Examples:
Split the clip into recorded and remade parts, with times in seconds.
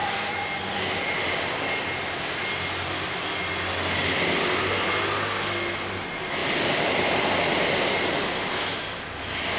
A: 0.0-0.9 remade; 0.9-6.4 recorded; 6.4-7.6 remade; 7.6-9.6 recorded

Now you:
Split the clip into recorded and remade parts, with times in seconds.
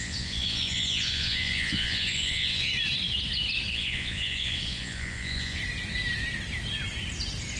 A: 0.0-2.7 remade; 2.7-3.7 recorded; 3.7-5.6 remade; 5.6-7.6 recorded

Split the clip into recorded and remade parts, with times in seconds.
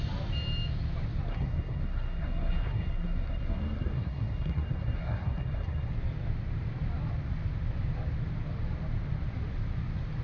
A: 0.0-1.3 recorded; 1.3-5.9 remade; 5.9-10.2 recorded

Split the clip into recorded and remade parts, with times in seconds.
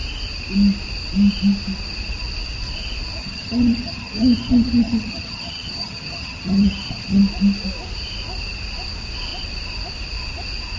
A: 0.0-3.2 recorded; 3.2-7.2 remade; 7.2-10.8 recorded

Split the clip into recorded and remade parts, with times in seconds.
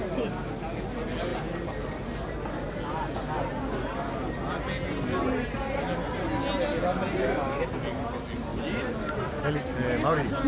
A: 0.0-10.5 recorded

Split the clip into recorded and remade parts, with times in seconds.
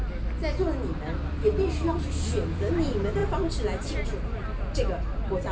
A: 0.0-5.5 recorded